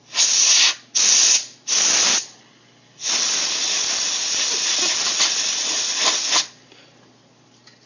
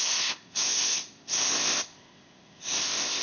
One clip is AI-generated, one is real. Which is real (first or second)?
first